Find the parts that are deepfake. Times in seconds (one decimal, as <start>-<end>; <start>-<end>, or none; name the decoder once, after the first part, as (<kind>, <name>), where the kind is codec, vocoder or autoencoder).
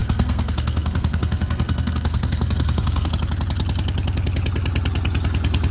0.0-3.1 (codec, SNAC)